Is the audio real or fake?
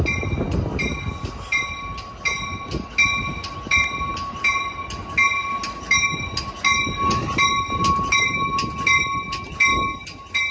real